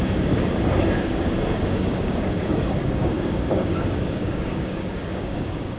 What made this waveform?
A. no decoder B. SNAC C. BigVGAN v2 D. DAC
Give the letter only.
D